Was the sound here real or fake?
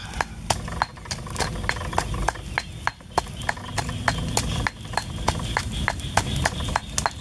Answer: real